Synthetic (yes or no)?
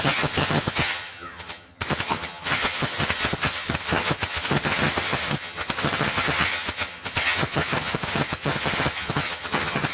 yes